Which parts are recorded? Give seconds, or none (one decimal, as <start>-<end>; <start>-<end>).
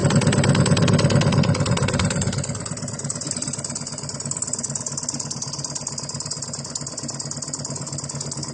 0.0-8.5